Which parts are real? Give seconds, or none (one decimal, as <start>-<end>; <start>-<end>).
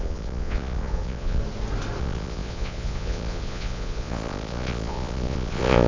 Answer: 1.4-2.0